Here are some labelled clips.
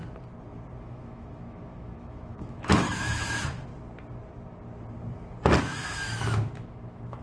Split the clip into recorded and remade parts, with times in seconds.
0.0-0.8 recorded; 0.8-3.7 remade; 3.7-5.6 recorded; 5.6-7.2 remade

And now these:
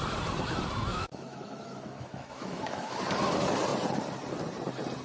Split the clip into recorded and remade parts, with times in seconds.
0.0-0.9 recorded; 0.9-3.0 remade; 3.0-5.0 recorded